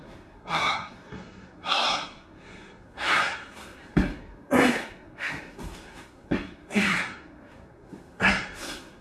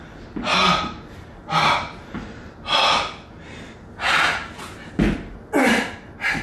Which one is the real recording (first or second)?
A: second